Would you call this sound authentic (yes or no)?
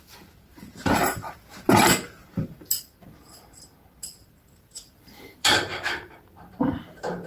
no